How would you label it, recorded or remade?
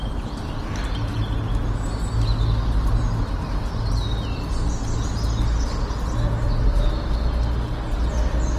recorded